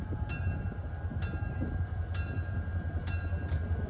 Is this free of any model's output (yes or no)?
yes